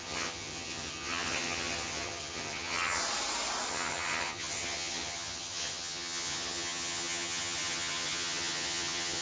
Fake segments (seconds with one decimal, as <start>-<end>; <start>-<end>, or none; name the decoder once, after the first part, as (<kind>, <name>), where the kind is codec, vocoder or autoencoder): 0.0-3.0 (vocoder, HiFi-GAN); 3.7-9.2